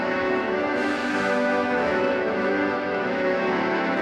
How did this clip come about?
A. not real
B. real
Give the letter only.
A